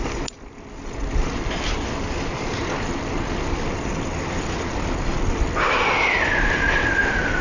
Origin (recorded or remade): recorded